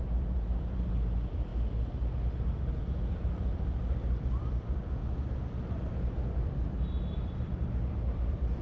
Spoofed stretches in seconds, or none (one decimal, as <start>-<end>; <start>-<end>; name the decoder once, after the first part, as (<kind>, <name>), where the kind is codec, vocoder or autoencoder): 0.0-1.5 (vocoder, BigVGAN v2); 2.8-5.0; 6.3-7.6; 8.2-8.6